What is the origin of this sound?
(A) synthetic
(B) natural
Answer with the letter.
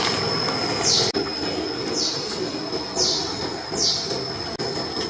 B